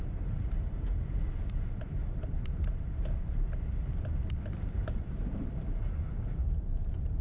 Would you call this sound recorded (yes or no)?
no